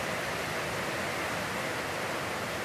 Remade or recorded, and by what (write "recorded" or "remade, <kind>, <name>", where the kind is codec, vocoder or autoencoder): recorded